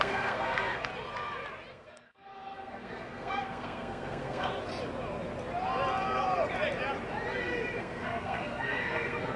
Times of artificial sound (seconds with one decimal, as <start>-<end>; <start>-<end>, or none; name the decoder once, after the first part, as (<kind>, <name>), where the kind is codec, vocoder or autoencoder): 0.0-0.9 (codec, SNAC); 1.7-4.5; 7.8-9.4